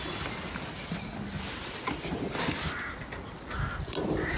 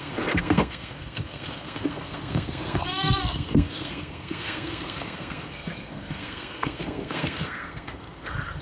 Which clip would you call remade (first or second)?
second